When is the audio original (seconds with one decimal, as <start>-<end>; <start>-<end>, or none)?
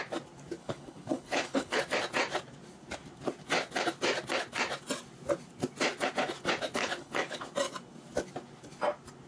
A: 0.0-0.6; 1.8-6.8; 7.4-9.3